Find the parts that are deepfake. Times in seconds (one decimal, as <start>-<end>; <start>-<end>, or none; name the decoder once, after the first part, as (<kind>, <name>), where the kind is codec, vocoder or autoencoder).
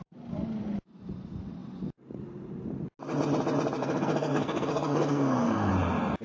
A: 3.8-5.7 (codec, SNAC)